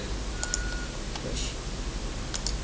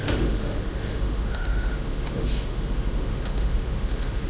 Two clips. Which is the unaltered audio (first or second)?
first